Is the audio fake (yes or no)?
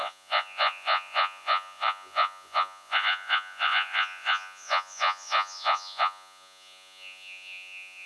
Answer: yes